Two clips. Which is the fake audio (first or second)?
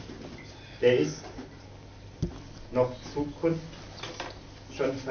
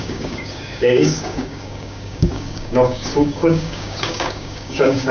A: second